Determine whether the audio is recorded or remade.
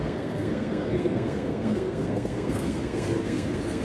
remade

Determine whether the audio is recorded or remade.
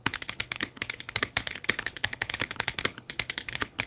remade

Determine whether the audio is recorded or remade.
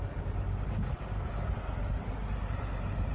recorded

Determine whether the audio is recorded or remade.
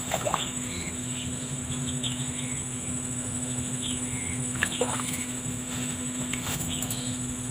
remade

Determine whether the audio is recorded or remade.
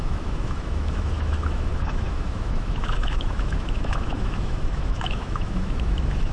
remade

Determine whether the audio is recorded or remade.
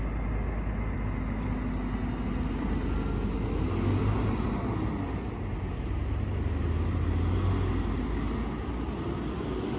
recorded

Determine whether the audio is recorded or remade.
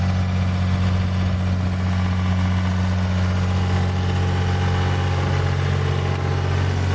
recorded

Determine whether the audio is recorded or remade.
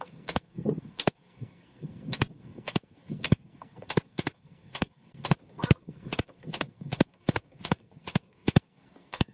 remade